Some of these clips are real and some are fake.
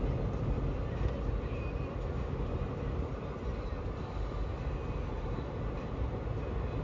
real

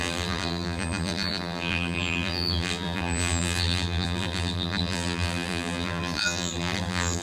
fake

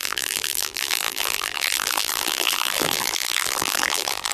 fake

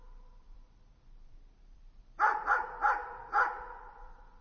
fake